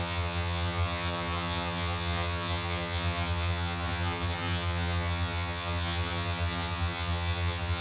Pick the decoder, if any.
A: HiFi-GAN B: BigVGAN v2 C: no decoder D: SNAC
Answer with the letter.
A